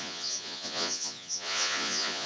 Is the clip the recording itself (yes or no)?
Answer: no